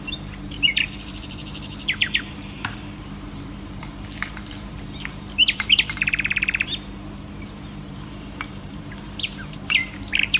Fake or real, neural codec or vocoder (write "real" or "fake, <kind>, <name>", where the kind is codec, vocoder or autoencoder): fake, vocoder, BigVGAN v2